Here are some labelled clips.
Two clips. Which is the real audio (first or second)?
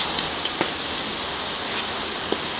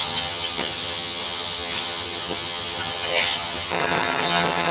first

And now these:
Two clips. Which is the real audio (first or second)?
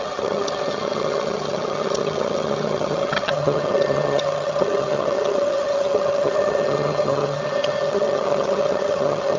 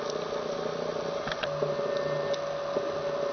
second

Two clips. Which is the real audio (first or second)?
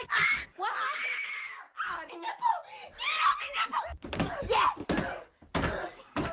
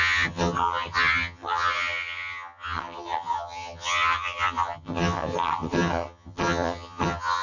first